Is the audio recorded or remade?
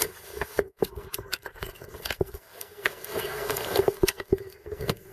remade